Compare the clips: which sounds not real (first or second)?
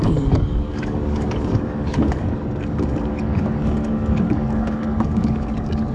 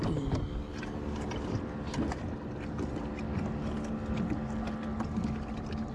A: first